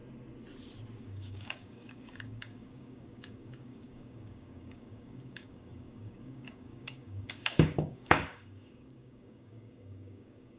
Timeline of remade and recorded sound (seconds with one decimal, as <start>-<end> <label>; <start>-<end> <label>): 0.0-1.0 recorded; 1.0-10.6 remade